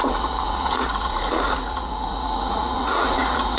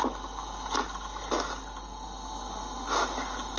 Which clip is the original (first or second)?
second